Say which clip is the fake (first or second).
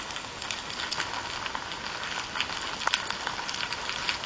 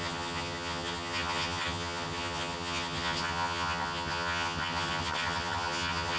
second